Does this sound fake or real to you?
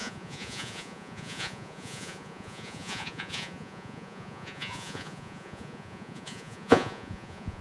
fake